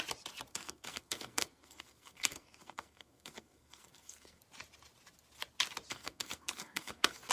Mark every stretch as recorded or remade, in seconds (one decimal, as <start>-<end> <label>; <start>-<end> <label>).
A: 0.0-0.5 recorded; 0.5-4.4 remade; 4.4-5.9 recorded; 5.9-7.3 remade